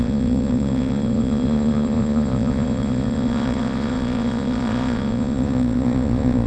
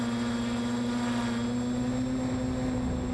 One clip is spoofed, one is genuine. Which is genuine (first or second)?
second